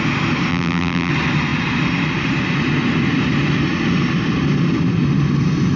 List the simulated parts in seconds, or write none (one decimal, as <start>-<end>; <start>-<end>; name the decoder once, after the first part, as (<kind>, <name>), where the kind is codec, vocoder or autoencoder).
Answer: 0.5-1.1 (vocoder, BigVGAN v2)